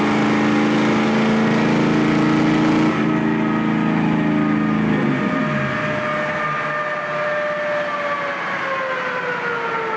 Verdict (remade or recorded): recorded